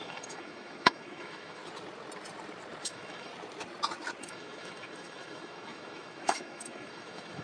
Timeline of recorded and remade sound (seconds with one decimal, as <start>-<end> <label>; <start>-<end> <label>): 0.0-1.6 remade; 1.6-2.8 recorded; 2.8-3.3 remade; 3.3-4.2 recorded; 4.2-7.4 remade